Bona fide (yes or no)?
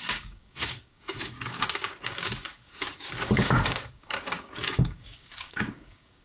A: no